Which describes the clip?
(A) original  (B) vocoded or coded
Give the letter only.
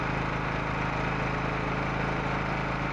A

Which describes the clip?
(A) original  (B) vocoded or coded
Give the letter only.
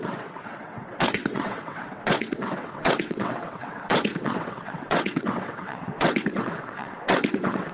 B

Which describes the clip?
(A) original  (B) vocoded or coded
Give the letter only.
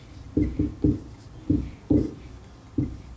A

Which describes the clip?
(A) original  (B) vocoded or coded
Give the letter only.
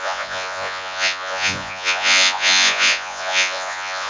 B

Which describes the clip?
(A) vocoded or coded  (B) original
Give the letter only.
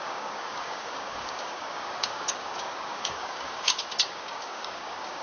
A